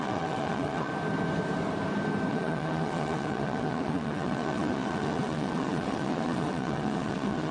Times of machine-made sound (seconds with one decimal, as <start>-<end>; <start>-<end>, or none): 0.0-0.9; 2.3-7.5

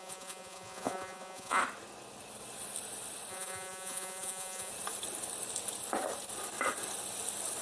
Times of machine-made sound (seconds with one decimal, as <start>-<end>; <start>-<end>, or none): 0.0-1.6; 3.3-4.7

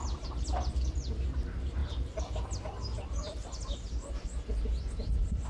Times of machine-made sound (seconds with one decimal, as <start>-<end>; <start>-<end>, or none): none